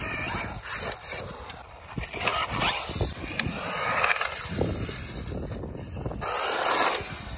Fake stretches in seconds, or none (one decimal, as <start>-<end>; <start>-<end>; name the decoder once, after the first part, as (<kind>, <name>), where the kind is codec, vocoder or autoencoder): none